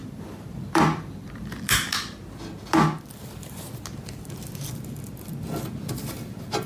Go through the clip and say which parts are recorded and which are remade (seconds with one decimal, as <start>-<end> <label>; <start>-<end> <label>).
0.0-1.5 remade; 1.5-6.7 recorded